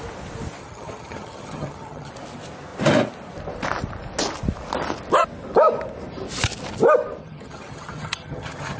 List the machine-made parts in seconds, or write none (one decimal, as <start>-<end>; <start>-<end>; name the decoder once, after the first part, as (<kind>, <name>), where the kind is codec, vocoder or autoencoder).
0.6-2.1 (vocoder, HiFi-GAN); 7.2-8.8

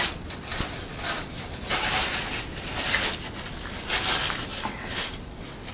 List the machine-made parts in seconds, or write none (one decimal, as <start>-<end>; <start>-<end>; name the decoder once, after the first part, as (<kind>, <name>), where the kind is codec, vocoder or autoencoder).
4.5-5.7 (vocoder, BigVGAN v2)